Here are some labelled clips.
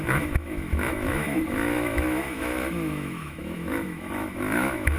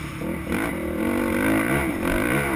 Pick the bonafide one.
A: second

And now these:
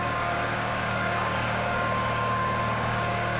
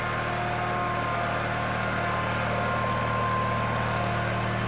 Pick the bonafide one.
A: second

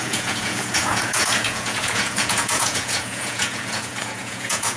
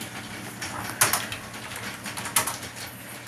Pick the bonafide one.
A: second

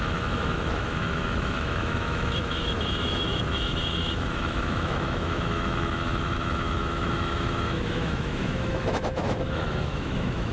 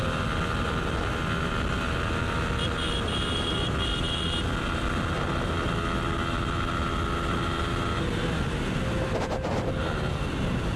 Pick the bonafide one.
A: second